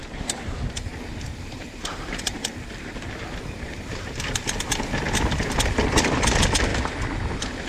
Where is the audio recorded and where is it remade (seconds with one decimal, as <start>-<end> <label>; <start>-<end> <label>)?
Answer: 0.0-4.6 remade; 4.6-6.7 recorded; 6.7-7.7 remade